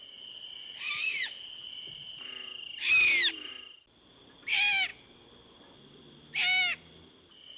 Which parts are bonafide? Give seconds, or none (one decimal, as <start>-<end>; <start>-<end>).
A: 0.0-7.6